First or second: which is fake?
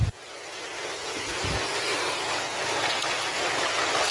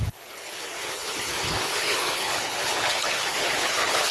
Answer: second